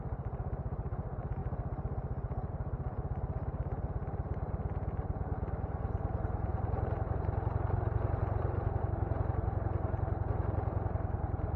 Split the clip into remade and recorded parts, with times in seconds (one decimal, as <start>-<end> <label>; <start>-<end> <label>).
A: 0.0-1.4 remade; 1.4-2.5 recorded; 2.5-6.5 remade; 6.5-7.2 recorded; 7.2-11.6 remade